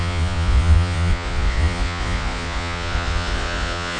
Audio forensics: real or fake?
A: fake